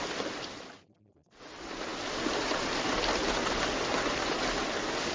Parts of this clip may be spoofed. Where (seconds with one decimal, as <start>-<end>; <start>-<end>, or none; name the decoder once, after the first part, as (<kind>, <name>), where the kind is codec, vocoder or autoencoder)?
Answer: none